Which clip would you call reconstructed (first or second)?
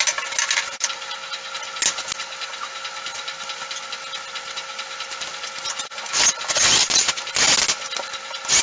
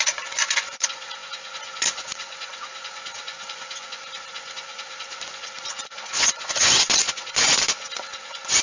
second